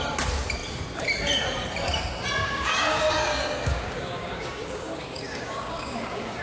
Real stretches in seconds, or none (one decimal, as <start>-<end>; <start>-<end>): 0.0-2.4